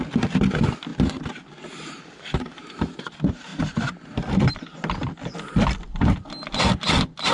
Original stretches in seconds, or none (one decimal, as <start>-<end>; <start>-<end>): 0.0-0.9; 3.1-7.3